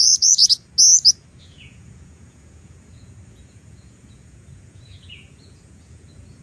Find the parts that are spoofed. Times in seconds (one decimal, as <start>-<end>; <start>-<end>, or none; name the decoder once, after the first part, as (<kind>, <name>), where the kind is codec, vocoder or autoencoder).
0.0-0.4 (vocoder, Vocos); 1.4-6.4